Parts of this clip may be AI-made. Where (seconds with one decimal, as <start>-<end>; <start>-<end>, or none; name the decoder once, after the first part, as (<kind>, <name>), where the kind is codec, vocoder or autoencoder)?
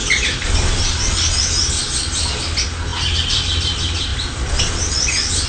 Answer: 0.0-1.0 (vocoder, BigVGAN v2)